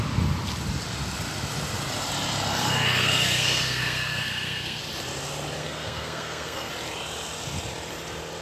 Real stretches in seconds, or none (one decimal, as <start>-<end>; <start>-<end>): 0.0-2.6; 4.8-5.6; 6.7-8.4